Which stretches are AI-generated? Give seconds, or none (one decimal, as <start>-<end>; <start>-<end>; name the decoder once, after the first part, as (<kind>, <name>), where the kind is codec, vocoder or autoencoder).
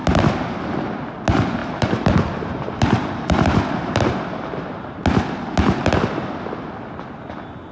1.6-4.1 (vocoder, BigVGAN v2)